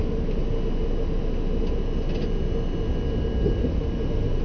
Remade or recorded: recorded